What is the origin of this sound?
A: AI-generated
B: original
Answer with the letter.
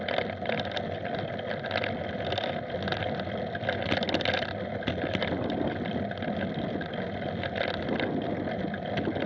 B